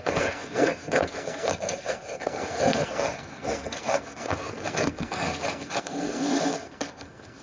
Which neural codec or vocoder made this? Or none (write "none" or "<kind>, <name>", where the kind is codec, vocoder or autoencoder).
codec, SNAC